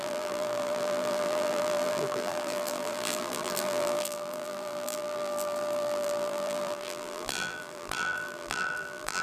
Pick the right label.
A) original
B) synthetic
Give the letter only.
B